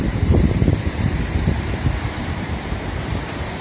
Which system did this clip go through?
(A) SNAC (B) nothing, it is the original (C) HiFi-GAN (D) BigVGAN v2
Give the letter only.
D